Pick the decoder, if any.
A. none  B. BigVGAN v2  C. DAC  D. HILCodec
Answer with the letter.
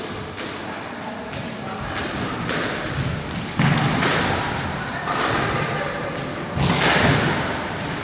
A